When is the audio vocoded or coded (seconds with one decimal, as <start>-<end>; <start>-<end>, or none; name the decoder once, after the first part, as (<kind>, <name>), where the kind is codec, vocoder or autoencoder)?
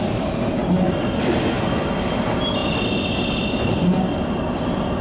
none